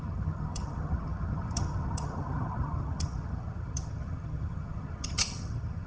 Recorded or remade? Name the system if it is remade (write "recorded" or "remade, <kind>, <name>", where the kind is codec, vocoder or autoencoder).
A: remade, vocoder, HiFi-GAN